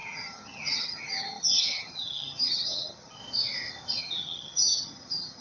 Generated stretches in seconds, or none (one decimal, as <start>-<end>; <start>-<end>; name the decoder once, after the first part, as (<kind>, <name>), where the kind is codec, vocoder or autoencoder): 0.0-3.2 (vocoder, HiFi-GAN); 4.0-5.4